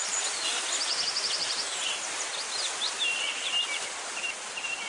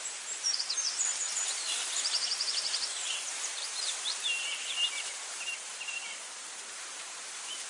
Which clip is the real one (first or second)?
first